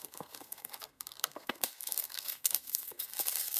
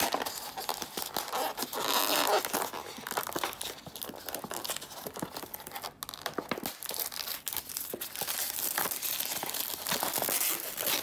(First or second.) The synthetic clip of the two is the first